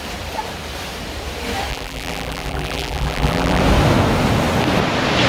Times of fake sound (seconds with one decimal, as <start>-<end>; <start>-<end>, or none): 1.7-3.6